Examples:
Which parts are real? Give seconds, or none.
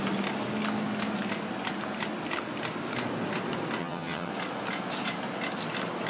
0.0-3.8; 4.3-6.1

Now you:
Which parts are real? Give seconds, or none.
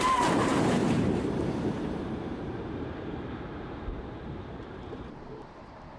none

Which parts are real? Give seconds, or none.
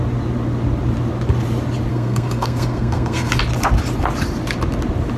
0.0-1.9; 3.3-5.2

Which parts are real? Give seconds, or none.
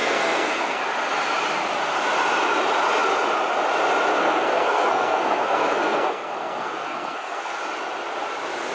0.8-4.2; 7.6-8.7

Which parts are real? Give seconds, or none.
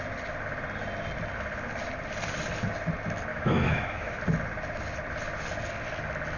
0.0-3.3; 4.2-6.4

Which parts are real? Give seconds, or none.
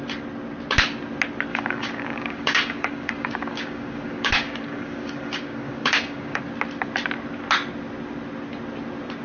0.0-1.5; 6.4-9.2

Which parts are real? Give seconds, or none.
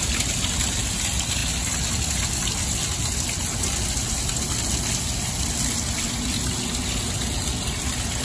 0.0-8.2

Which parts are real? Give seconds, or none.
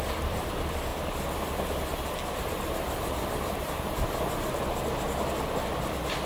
0.0-6.3